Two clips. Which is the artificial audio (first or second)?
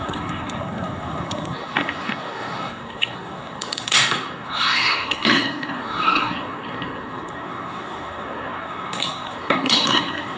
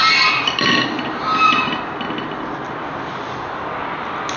first